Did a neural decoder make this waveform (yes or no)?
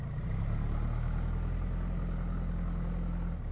no